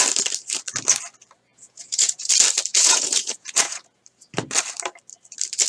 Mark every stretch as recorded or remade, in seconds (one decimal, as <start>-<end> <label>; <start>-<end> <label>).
0.0-1.5 recorded; 1.5-2.3 remade; 2.3-2.7 recorded; 2.7-4.0 remade; 4.0-5.7 recorded

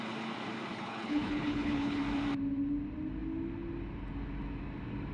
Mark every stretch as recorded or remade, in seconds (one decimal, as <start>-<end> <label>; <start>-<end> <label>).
0.0-0.7 recorded; 0.7-2.0 remade; 2.0-5.1 recorded